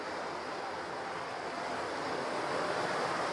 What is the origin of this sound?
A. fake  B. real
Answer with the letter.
B